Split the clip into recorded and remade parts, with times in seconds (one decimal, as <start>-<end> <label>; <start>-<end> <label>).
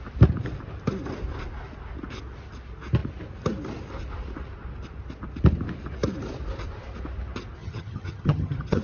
0.0-7.6 recorded; 7.6-8.8 remade